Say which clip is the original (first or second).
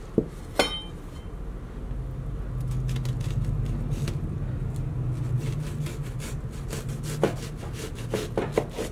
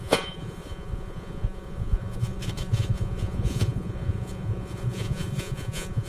first